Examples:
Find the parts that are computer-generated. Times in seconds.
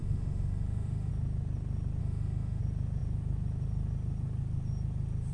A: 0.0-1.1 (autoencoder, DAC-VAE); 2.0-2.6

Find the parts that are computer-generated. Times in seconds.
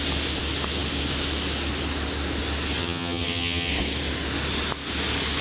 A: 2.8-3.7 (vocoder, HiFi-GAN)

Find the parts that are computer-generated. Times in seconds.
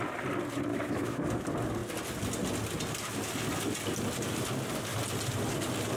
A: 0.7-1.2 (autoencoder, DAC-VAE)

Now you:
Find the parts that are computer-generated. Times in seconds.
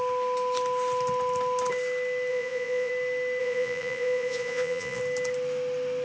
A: 2.3-2.9 (vocoder, Vocos); 3.4-5.0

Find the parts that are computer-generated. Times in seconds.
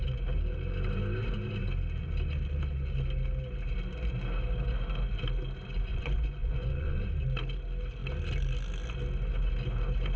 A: 5.9-7.1 (vocoder, Vocos)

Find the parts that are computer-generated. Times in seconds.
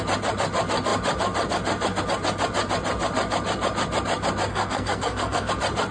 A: 4.5-5.5 (codec, SNAC)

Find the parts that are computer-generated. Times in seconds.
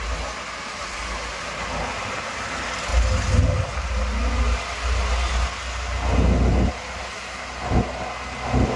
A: none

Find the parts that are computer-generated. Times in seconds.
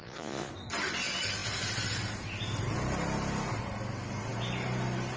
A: 0.0-0.5 (vocoder, Vocos)